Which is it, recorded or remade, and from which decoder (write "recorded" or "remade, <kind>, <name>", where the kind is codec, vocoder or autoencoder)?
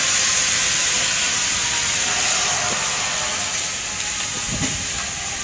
recorded